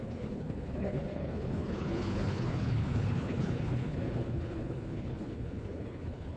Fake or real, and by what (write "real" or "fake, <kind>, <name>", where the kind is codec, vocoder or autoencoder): fake, codec, HILCodec